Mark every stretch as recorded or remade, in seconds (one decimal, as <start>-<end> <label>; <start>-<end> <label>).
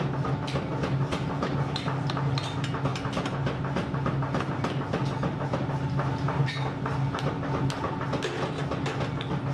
0.0-9.5 recorded